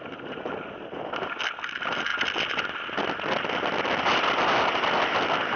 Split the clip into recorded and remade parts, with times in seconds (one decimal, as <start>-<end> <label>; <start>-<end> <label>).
0.0-5.6 recorded